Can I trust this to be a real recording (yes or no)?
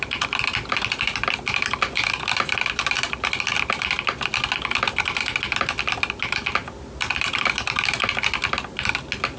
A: yes